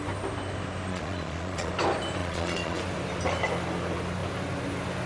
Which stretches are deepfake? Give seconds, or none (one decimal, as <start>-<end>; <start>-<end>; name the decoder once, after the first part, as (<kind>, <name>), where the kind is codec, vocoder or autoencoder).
0.9-1.7 (vocoder, Vocos); 2.2-2.8